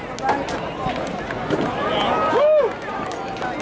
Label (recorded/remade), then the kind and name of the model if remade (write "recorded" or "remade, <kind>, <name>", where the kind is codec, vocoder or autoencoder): recorded